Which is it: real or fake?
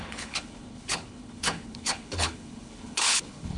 fake